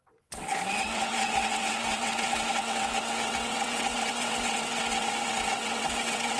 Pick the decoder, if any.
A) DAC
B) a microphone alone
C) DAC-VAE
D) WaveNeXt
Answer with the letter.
D